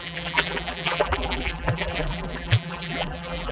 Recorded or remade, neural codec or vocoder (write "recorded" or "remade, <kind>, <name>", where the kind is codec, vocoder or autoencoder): remade, vocoder, BigVGAN v2